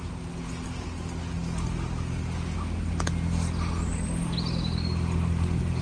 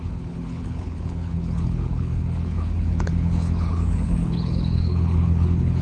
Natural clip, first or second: first